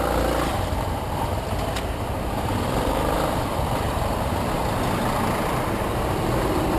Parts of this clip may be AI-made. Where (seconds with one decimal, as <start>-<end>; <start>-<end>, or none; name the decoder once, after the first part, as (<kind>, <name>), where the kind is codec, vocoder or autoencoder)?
0.5-4.6 (vocoder, BigVGAN v2)